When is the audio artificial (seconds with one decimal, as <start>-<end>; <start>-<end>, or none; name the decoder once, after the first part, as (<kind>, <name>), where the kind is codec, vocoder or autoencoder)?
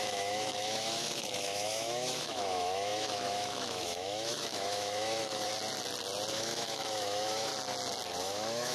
0.0-5.5 (autoencoder, DAC-VAE); 6.3-7.5; 8.2-8.7